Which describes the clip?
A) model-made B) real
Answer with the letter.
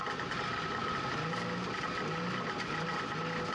B